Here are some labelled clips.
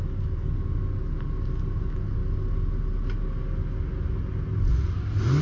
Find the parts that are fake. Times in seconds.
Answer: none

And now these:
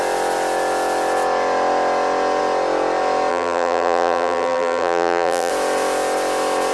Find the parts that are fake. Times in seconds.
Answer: 3.3-5.5 (vocoder, BigVGAN v2)

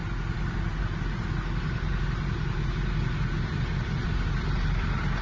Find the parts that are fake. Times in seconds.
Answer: none

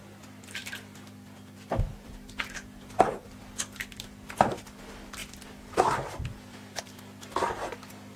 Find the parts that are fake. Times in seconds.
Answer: 0.0-8.2 (vocoder, BigVGAN v2)

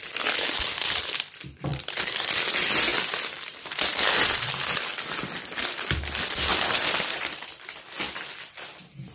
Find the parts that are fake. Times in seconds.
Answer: 1.7-2.3 (vocoder, BigVGAN v2); 2.9-4.8; 6.5-8.5

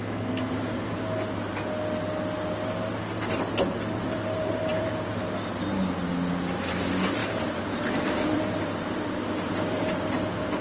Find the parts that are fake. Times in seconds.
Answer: 4.0-4.9 (vocoder, BigVGAN v2); 7.2-10.6

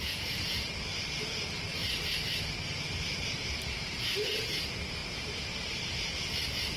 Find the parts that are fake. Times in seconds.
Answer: 0.0-1.8 (vocoder, BigVGAN v2); 2.8-6.8